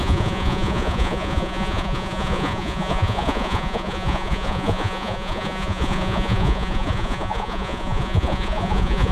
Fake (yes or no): yes